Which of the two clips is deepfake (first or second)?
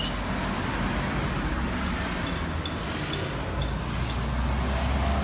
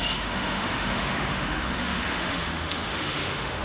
second